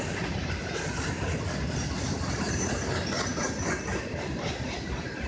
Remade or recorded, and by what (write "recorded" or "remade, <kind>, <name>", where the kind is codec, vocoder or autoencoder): recorded